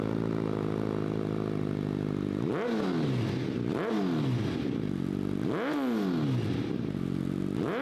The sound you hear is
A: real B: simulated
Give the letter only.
A